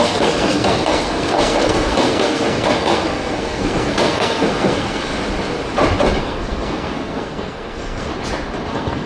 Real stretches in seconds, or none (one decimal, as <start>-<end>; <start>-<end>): 5.1-6.2; 8.1-8.7